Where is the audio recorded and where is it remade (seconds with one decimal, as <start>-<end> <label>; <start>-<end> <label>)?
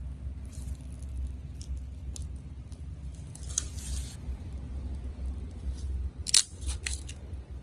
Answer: 0.0-7.6 recorded